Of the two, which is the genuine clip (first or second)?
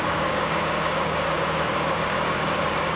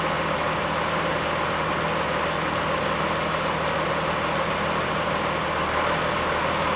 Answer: second